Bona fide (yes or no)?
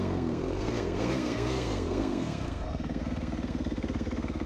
no